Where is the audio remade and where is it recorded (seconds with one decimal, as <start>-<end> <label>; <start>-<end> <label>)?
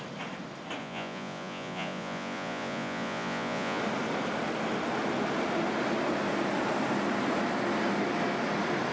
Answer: 0.0-0.8 recorded; 0.8-3.8 remade; 3.8-8.9 recorded